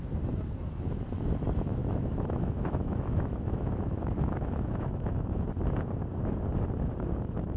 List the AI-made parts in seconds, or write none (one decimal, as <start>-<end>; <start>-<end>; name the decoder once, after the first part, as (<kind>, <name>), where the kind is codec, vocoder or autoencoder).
1.8-5.4 (autoencoder, DAC-VAE)